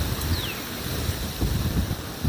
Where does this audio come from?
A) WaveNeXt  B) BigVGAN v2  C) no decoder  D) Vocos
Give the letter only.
B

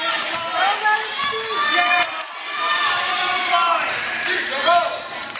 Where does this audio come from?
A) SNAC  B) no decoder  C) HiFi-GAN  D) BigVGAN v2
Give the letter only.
B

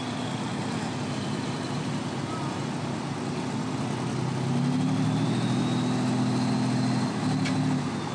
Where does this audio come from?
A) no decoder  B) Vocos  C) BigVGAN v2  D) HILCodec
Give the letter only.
A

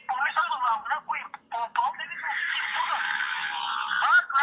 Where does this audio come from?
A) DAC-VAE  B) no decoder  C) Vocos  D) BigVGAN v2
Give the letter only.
D